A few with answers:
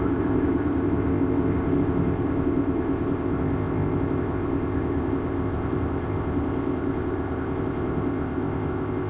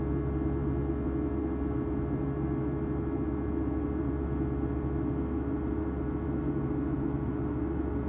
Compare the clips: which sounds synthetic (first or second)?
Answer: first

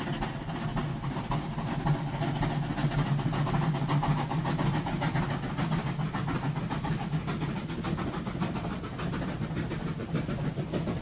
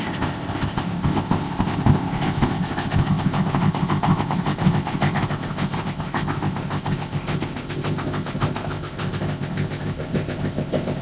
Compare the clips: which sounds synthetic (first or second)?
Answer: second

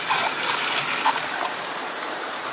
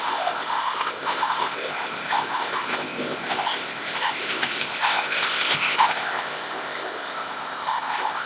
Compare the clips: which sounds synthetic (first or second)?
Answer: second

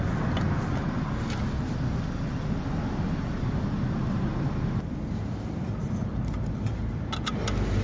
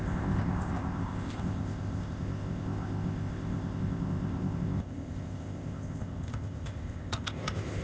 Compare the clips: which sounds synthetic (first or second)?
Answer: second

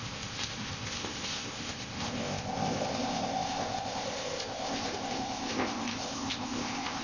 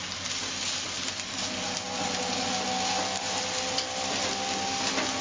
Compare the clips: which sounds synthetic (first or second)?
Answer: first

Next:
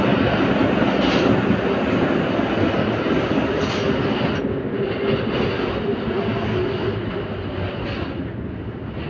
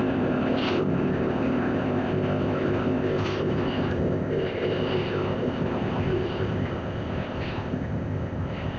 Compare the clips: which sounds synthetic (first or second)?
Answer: second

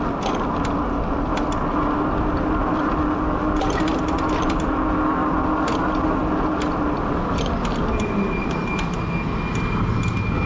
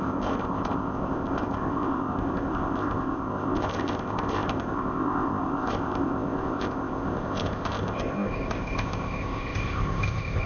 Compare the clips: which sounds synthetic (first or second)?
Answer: second